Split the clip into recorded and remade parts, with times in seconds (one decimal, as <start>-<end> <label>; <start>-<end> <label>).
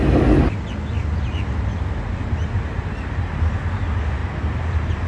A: 0.0-5.1 recorded